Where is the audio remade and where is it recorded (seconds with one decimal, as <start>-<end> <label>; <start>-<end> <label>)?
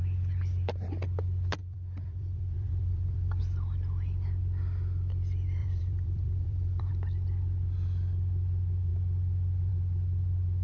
0.0-1.6 recorded; 1.6-3.4 remade; 3.4-5.6 recorded; 5.6-6.9 remade; 6.9-10.6 recorded